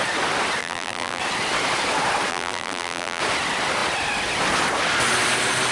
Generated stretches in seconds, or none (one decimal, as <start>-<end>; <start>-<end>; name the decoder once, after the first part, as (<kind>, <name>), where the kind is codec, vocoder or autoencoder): 0.6-1.2 (vocoder, BigVGAN v2); 2.3-3.2